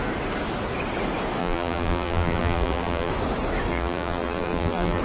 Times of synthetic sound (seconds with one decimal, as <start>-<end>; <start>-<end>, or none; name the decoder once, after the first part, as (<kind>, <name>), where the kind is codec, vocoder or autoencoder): 1.4-3.1 (vocoder, BigVGAN v2); 3.7-5.0